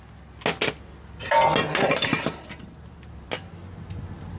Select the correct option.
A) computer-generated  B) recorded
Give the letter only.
B